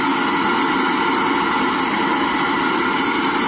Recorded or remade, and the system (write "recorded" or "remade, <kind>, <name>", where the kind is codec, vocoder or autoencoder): recorded